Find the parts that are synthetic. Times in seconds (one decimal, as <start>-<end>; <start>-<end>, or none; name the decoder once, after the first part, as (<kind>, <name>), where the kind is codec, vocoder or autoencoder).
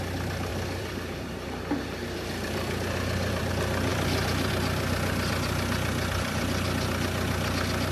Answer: 0.5-3.5 (vocoder, BigVGAN v2); 3.9-4.5